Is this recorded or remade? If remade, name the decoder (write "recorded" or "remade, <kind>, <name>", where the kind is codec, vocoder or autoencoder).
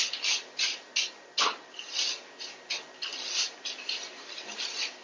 recorded